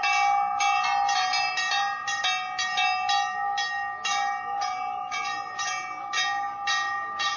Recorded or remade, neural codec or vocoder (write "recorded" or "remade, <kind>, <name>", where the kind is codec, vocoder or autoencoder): recorded